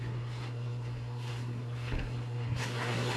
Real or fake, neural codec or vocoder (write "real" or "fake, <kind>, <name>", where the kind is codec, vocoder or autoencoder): fake, codec, SNAC